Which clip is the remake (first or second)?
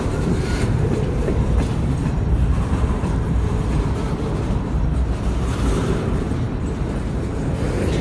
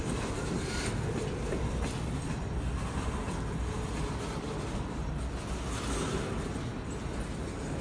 first